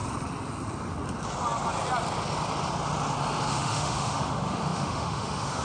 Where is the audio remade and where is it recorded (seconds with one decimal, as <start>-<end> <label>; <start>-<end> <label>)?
0.0-3.4 recorded; 3.4-5.6 remade